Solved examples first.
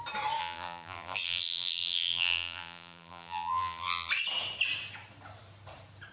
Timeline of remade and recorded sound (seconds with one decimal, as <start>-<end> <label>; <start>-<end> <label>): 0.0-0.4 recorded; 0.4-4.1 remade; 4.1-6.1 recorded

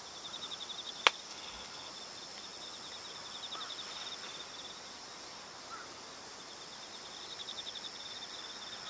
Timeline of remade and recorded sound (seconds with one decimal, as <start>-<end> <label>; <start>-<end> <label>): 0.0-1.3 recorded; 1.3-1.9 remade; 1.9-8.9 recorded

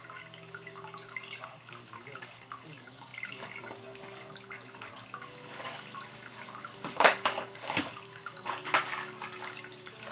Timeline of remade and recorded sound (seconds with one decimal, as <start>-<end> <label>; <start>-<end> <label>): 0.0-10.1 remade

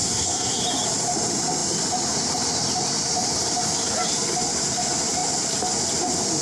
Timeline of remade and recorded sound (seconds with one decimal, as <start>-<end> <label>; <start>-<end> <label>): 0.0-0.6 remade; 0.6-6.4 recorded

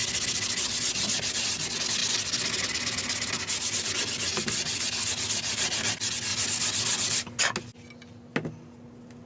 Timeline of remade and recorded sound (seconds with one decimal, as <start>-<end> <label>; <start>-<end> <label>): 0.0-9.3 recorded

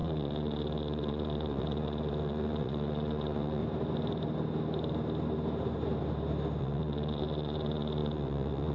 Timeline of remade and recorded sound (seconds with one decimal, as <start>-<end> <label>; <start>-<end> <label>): 0.0-3.6 remade; 3.6-6.6 recorded; 6.6-8.7 remade

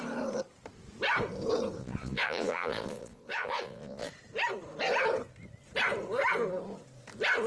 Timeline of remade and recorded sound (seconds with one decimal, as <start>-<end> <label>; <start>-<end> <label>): 0.0-1.8 recorded; 1.8-4.1 remade; 4.1-7.5 recorded